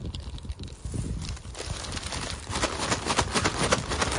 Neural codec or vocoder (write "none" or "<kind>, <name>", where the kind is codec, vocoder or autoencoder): none